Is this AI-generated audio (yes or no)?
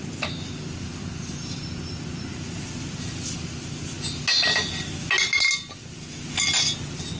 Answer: no